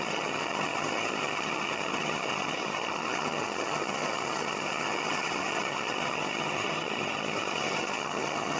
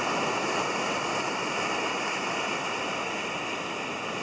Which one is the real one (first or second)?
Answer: second